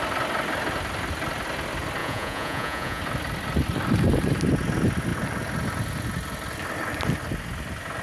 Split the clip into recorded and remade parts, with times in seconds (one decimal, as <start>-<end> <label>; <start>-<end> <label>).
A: 0.0-2.0 recorded; 2.0-3.0 remade; 3.0-8.0 recorded